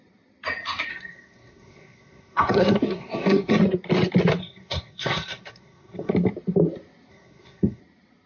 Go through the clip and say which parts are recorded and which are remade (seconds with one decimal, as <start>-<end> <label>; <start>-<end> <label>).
0.0-0.9 recorded; 0.9-3.6 remade; 3.6-4.4 recorded; 4.4-6.1 remade; 6.1-7.1 recorded; 7.1-7.8 remade; 7.8-8.3 recorded